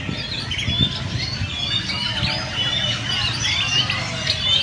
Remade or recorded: recorded